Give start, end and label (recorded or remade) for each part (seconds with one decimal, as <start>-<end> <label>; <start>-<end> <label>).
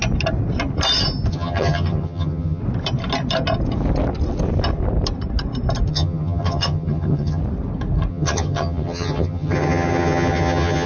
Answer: 0.0-1.3 recorded; 1.3-2.6 remade; 2.6-5.9 recorded; 5.9-7.4 remade; 7.4-8.1 recorded; 8.1-10.9 remade